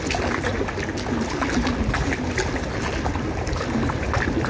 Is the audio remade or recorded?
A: recorded